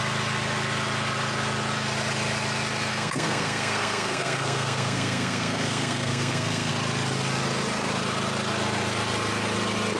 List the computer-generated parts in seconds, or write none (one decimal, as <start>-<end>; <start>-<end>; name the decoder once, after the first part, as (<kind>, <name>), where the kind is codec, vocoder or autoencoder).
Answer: 2.9-6.7 (codec, SNAC)